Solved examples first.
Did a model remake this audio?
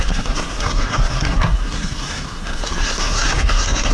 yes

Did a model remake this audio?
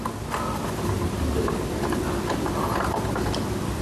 no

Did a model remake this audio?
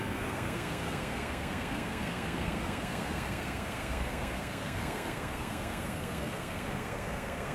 yes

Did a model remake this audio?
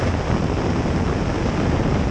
no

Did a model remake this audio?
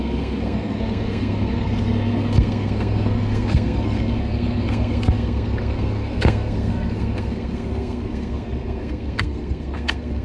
yes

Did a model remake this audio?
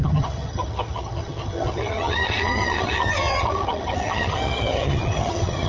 yes